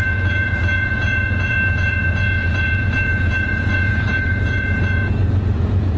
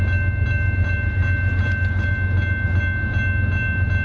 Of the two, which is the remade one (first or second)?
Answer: first